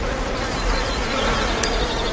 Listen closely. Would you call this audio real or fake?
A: fake